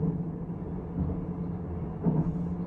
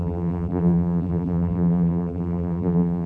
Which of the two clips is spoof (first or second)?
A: second